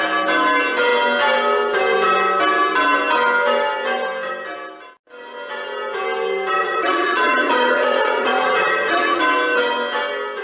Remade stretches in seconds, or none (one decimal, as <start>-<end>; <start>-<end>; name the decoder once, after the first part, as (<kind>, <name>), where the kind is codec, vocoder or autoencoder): 6.6-9.2 (vocoder, Vocos)